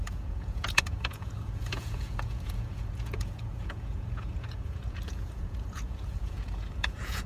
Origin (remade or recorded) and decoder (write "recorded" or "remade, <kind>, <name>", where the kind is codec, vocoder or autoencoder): remade, vocoder, Vocos